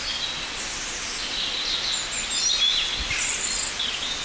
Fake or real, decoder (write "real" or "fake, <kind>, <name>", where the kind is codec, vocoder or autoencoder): real